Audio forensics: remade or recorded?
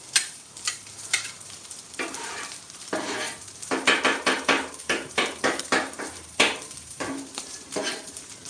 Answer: remade